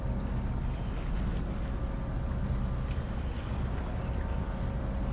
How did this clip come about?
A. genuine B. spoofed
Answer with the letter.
A